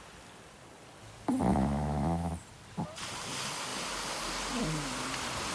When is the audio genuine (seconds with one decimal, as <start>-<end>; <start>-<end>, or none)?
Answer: 0.0-1.5; 2.3-5.5